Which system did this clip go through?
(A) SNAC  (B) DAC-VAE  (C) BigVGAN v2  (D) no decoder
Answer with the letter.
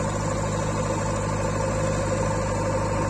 D